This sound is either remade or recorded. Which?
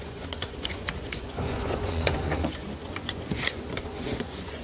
remade